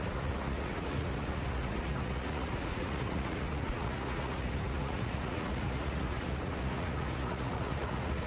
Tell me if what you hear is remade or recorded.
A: remade